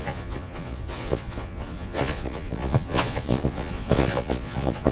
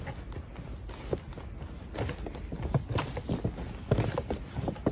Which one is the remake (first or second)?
first